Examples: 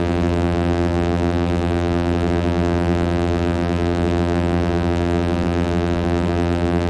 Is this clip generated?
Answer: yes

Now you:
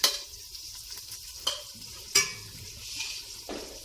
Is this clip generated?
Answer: yes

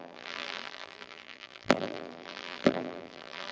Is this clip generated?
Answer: yes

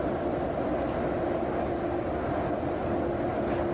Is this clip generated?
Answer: no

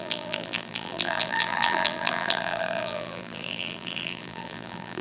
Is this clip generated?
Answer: yes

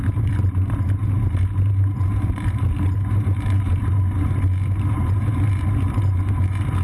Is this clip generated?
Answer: yes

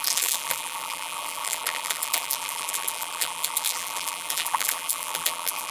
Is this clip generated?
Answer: yes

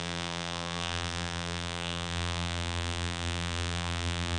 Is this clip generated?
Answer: yes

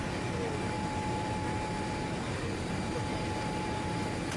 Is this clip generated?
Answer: no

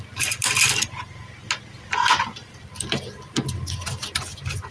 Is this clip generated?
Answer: yes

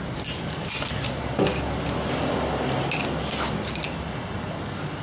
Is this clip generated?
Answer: no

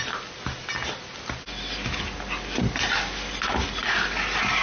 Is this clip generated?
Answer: no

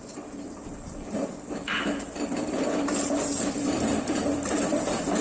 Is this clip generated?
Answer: yes